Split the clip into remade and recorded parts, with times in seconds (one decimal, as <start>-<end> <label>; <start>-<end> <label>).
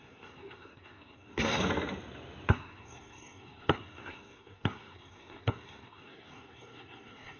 0.0-1.6 remade; 1.6-2.5 recorded; 2.5-7.4 remade